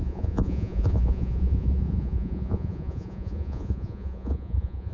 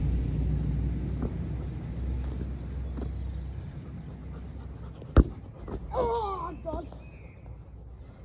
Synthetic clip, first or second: first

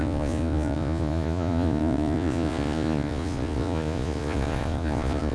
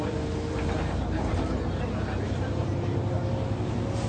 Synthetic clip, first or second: first